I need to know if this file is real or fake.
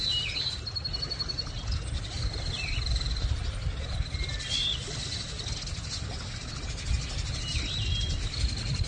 real